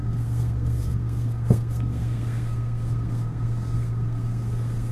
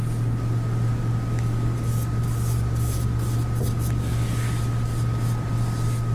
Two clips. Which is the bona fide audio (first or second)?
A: second